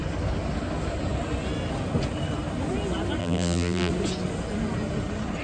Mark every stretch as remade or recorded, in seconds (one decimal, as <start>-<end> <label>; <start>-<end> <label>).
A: 0.0-3.2 recorded; 3.2-3.9 remade; 3.9-5.4 recorded